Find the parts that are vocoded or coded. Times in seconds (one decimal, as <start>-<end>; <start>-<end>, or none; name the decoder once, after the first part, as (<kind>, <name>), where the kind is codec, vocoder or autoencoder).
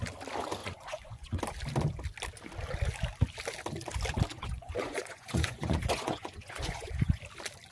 0.6-1.4 (vocoder, Vocos); 4.3-7.2